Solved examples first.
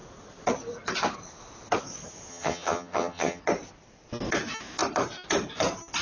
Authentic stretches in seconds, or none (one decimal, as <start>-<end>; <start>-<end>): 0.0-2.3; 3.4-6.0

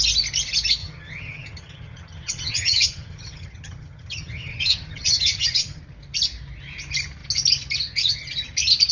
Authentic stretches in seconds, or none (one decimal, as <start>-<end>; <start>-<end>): 0.0-0.8; 5.8-8.9

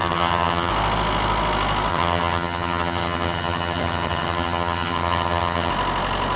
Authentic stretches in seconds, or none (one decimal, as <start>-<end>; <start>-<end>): 0.7-1.9; 5.7-6.4

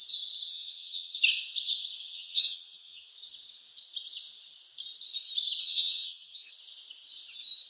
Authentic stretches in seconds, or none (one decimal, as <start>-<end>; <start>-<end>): 0.0-0.5; 1.2-2.0; 3.1-5.6; 6.5-7.7

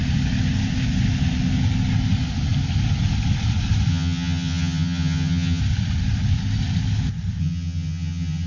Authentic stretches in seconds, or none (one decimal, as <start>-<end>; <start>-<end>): 0.0-3.9; 5.6-7.4